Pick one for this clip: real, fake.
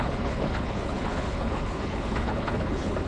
fake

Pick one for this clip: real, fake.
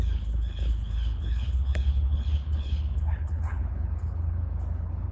fake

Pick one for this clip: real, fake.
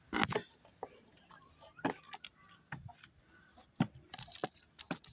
real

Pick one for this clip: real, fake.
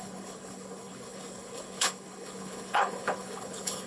fake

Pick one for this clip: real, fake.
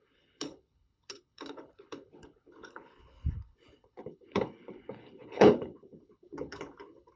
fake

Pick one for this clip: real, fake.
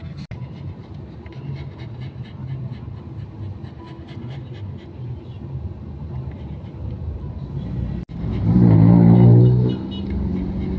real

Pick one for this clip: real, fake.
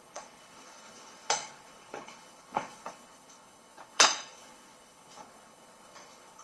fake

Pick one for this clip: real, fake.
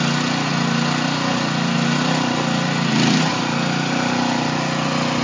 real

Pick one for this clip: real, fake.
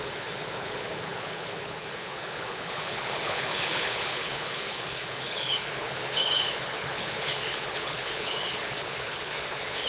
fake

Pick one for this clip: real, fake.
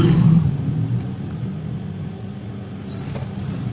real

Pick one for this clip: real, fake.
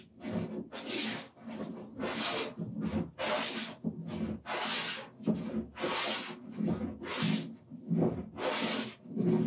real